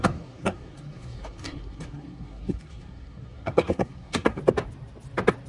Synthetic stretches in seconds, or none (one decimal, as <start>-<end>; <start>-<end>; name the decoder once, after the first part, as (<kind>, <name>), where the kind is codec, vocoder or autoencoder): 0.0-4.4 (codec, SNAC)